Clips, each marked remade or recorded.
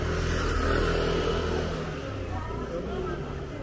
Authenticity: recorded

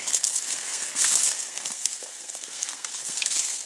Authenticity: remade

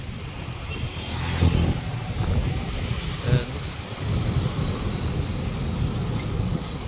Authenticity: recorded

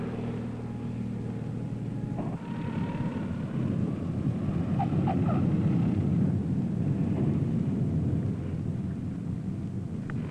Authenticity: recorded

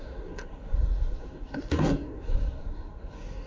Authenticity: remade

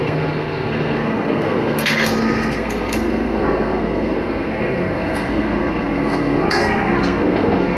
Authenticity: remade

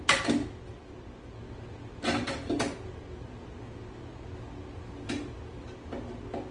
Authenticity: recorded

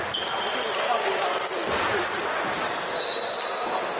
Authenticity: recorded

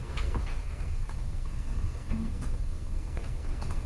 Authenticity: remade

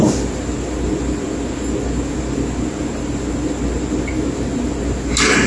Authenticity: recorded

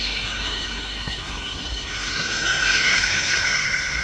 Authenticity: remade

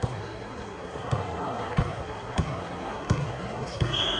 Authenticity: remade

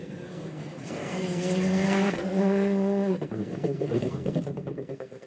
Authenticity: remade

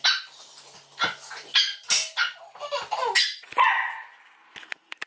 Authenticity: recorded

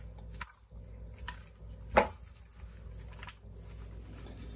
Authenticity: recorded